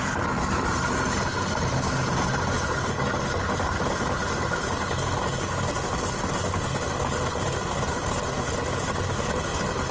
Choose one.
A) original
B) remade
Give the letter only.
A